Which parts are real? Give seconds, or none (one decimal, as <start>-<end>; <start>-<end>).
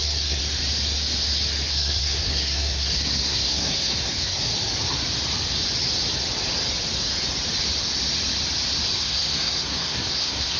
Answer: 0.4-1.7; 4.5-9.0